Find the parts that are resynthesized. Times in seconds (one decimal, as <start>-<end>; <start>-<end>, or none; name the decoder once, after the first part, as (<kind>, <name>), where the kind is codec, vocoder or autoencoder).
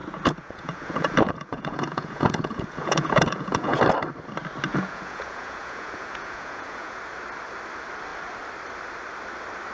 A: 0.0-3.8 (vocoder, Vocos); 4.7-7.0